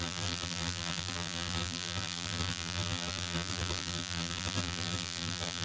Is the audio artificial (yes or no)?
yes